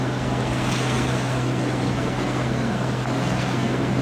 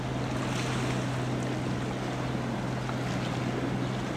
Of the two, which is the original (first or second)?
second